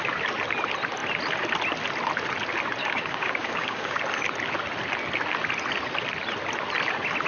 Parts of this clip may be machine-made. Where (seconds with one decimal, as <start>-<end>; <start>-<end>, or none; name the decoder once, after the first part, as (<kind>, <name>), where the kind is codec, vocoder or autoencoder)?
2.8-4.0 (codec, DAC)

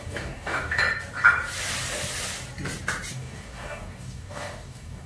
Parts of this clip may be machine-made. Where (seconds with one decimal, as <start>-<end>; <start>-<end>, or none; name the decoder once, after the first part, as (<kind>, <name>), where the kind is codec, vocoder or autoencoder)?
0.0-0.8 (codec, DAC); 3.1-5.1

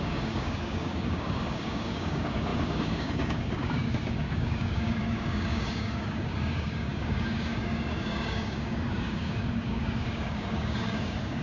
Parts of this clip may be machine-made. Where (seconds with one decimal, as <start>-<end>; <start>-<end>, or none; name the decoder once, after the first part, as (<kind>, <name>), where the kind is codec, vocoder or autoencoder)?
0.0-11.4 (codec, DAC)

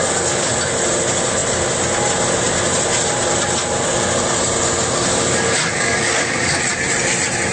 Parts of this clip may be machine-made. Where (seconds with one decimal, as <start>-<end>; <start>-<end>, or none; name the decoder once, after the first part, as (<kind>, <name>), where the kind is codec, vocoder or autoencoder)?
0.0-0.5 (codec, DAC); 5.1-6.6

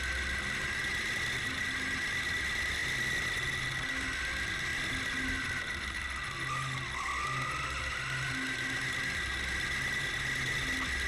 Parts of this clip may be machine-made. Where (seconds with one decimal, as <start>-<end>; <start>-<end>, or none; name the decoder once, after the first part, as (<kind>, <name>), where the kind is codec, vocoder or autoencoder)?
none

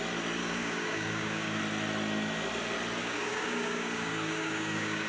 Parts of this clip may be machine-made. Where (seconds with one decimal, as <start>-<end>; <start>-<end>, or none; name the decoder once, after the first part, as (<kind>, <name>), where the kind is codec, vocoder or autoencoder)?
0.4-1.6 (codec, DAC); 3.0-5.1

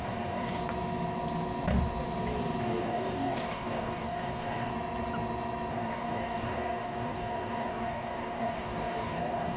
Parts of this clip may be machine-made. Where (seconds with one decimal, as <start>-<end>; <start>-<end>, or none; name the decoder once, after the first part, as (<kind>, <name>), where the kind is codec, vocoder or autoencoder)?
0.0-0.6 (codec, DAC); 2.6-4.7; 5.7-9.6

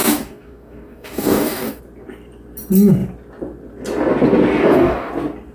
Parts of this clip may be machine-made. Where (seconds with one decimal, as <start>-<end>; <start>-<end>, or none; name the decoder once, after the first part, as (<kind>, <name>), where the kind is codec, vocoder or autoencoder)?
0.0-1.8 (codec, DAC); 4.6-5.1